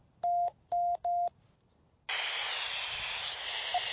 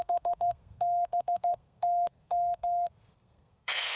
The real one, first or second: first